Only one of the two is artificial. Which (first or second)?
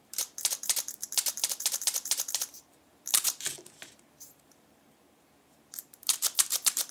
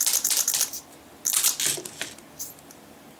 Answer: first